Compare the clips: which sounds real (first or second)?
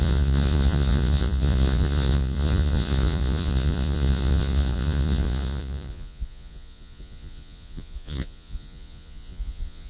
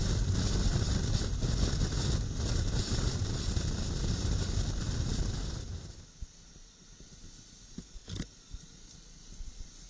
second